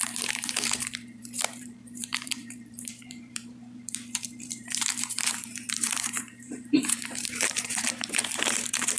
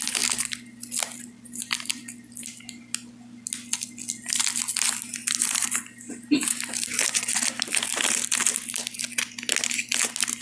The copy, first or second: first